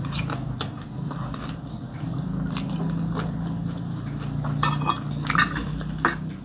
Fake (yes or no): no